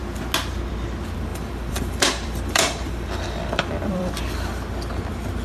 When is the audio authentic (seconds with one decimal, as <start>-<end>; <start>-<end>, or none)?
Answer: 0.0-1.3; 4.1-5.4